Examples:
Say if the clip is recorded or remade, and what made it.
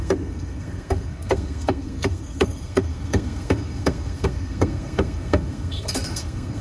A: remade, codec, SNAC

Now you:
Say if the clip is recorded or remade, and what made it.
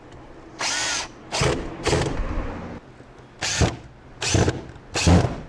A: recorded